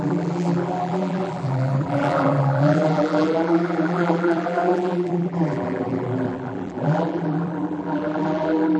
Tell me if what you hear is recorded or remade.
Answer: remade